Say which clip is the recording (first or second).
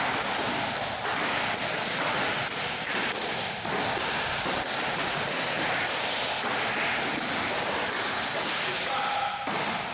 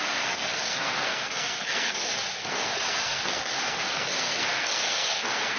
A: first